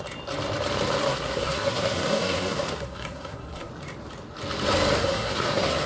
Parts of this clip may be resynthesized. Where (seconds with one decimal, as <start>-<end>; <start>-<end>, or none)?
1.0-3.7; 5.0-5.9